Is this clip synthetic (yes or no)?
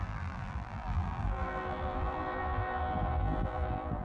yes